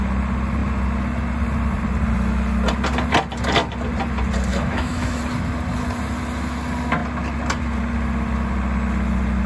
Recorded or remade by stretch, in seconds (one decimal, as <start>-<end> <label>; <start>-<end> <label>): 0.0-4.5 recorded; 4.5-5.2 remade; 5.2-9.5 recorded